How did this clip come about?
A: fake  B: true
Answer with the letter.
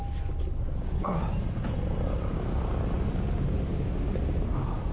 B